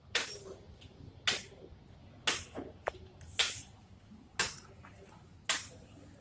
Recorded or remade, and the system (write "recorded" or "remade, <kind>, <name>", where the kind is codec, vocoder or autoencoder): recorded